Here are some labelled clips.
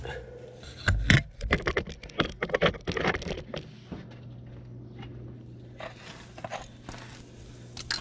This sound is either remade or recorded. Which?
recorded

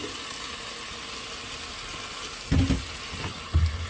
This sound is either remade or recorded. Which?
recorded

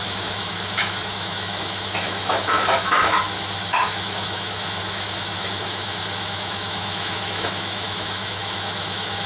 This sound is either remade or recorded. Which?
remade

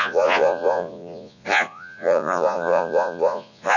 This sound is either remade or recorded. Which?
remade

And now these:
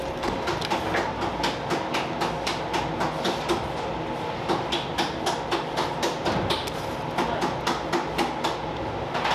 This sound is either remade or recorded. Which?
recorded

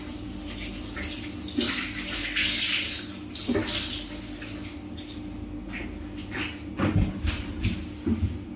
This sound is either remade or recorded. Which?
recorded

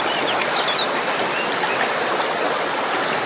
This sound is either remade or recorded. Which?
recorded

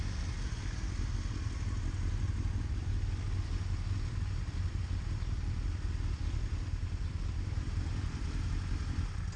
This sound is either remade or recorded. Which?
recorded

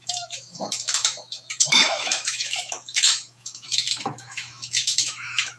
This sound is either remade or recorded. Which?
remade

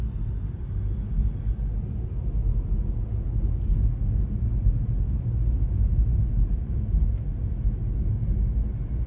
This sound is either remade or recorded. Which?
recorded